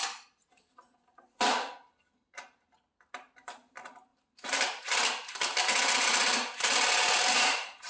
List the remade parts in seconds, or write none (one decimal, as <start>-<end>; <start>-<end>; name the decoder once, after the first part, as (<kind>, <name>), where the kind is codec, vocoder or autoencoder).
none